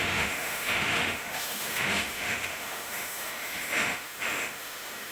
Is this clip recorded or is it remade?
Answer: remade